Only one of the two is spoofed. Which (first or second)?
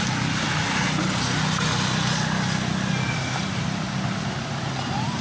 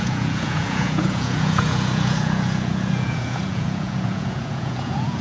second